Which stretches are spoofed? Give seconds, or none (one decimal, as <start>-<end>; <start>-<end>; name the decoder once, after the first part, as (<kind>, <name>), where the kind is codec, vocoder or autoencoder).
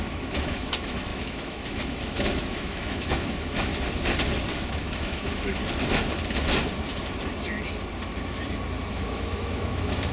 0.0-3.7 (autoencoder, DAC-VAE); 4.5-5.6; 8.9-10.1